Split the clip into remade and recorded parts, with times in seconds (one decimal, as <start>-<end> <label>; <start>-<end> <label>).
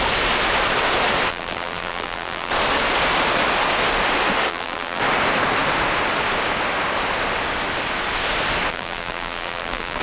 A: 0.0-1.3 recorded; 1.3-2.5 remade; 2.5-4.5 recorded; 4.5-5.0 remade; 5.0-8.7 recorded; 8.7-10.0 remade